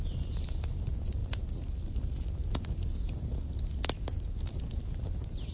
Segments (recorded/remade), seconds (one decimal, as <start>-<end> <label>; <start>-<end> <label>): 0.0-5.5 recorded